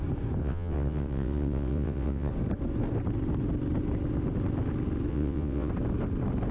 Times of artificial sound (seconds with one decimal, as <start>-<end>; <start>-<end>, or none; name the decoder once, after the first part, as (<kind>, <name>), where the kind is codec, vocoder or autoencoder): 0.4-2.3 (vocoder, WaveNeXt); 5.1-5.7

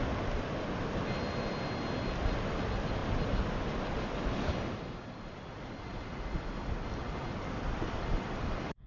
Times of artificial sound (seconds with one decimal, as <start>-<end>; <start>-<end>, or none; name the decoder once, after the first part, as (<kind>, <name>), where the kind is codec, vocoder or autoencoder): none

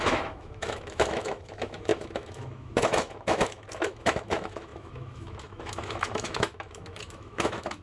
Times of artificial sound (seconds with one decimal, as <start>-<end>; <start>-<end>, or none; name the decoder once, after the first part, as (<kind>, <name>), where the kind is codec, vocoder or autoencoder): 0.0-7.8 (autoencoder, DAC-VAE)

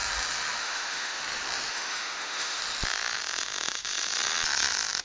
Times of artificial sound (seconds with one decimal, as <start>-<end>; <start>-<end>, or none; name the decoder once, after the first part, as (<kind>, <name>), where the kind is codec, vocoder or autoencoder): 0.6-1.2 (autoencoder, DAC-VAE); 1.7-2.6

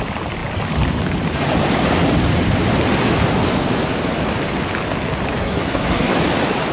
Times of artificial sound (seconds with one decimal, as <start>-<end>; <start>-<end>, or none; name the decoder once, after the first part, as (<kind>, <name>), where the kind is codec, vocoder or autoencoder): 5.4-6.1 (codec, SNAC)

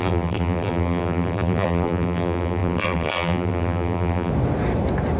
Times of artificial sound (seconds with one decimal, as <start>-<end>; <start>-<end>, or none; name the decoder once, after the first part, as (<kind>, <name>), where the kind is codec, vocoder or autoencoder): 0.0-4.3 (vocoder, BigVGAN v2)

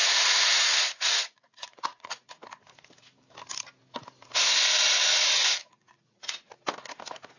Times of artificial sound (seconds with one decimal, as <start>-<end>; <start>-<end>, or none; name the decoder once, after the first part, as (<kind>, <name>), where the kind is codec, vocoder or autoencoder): 0.0-2.3 (vocoder, Vocos); 5.6-6.3

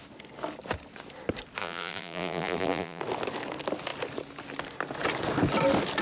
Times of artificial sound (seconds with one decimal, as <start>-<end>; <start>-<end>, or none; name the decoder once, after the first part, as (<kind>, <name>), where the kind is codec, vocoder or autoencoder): 1.6-3.0 (vocoder, BigVGAN v2)